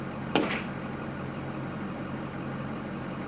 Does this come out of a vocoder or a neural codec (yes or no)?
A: no